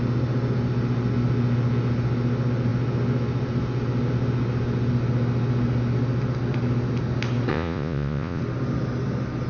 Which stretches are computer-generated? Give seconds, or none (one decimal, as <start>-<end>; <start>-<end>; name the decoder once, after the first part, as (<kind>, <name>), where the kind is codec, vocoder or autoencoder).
7.5-8.4 (vocoder, Vocos)